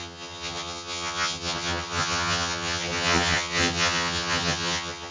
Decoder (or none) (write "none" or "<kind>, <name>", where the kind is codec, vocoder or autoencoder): vocoder, HiFi-GAN